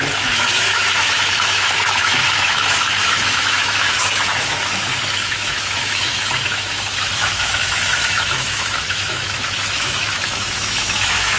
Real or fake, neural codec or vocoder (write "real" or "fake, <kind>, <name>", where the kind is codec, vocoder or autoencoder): fake, autoencoder, DAC-VAE